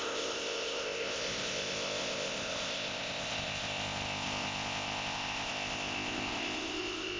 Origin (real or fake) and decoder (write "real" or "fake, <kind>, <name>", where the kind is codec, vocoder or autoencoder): fake, codec, ZipCodec